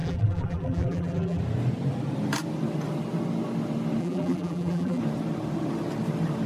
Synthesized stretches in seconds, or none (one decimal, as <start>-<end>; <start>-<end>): 0.0-1.4; 4.0-5.0